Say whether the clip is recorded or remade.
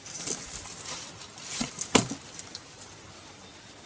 recorded